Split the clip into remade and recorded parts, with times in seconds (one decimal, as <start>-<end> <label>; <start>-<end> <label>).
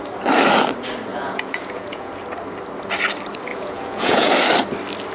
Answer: 0.0-1.1 recorded; 1.1-2.1 remade; 2.1-3.5 recorded; 3.5-4.3 remade; 4.3-5.1 recorded